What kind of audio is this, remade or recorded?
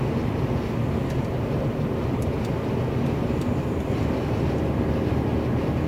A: recorded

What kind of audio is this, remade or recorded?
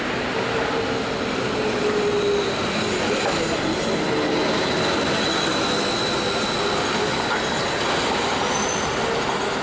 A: recorded